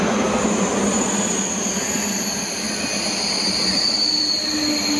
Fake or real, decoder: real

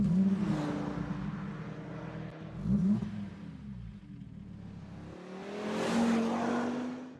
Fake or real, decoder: real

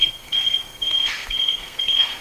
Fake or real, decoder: fake, codec, SNAC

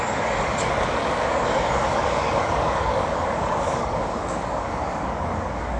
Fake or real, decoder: fake, codec, DAC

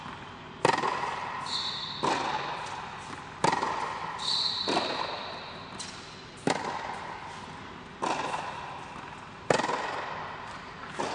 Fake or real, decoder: real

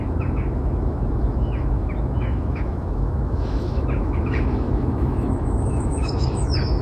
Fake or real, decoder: fake, autoencoder, DAC-VAE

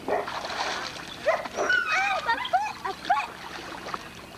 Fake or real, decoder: real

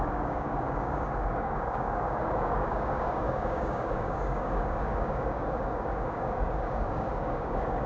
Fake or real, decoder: fake, codec, DAC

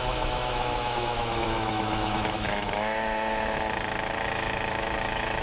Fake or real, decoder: fake, autoencoder, DAC-VAE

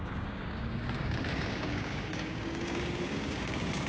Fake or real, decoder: fake, codec, DAC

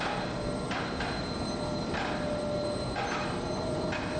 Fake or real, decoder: real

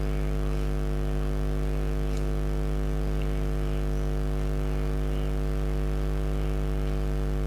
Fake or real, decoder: real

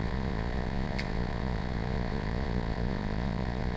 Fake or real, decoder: fake, vocoder, Vocos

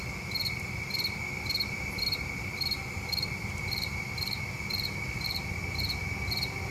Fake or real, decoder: real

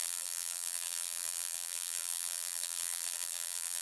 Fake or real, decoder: fake, vocoder, BigVGAN v2